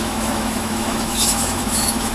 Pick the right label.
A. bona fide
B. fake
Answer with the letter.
B